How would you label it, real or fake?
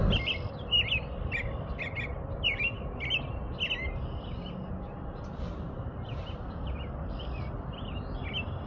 real